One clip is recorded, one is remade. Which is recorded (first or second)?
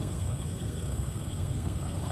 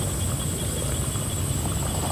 second